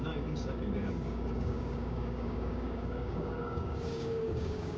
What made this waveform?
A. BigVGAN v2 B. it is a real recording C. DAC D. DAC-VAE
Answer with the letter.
C